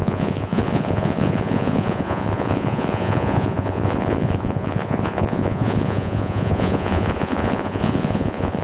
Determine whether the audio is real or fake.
fake